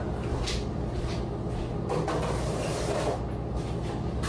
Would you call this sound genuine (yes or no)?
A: yes